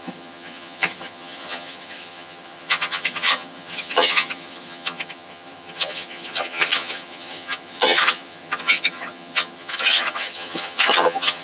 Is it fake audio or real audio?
fake